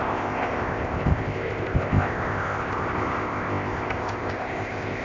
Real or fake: fake